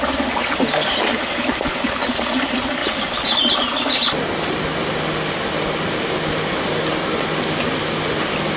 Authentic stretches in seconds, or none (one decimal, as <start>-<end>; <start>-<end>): 0.0-8.6